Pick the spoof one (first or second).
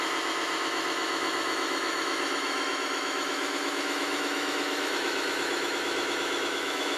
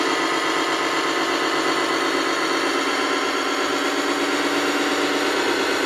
first